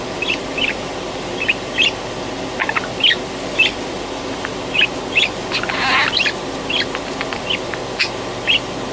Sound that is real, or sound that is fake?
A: real